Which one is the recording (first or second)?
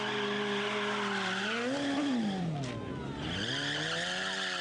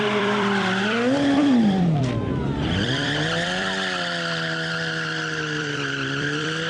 first